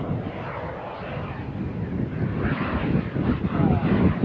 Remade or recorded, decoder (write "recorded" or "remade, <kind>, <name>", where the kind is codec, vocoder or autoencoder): recorded